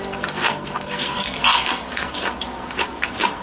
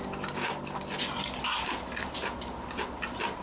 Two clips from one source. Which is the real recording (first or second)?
second